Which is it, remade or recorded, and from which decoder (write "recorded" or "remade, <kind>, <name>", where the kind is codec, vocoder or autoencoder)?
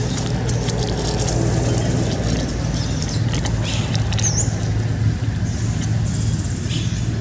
recorded